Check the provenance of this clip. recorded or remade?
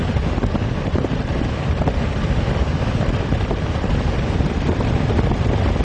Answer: recorded